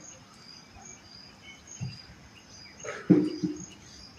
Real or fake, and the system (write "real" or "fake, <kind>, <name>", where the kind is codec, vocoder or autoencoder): real